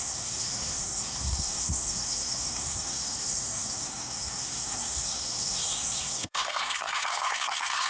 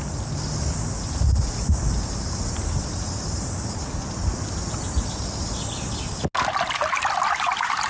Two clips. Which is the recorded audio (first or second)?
second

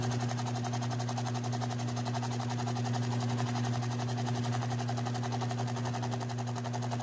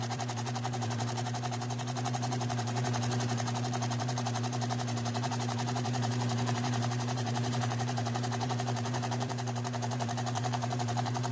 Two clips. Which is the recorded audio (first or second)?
first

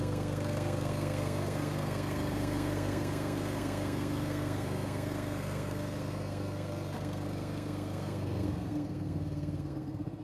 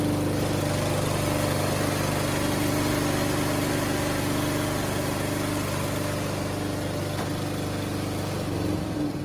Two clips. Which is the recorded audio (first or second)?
second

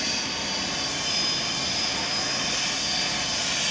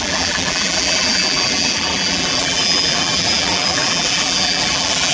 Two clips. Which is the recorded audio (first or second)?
first